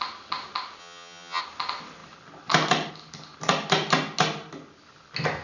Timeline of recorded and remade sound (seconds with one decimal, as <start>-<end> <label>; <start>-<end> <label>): 0.0-0.8 recorded; 0.8-1.4 remade; 1.4-5.4 recorded